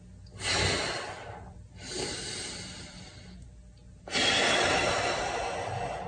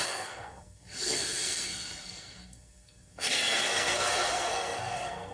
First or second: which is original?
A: first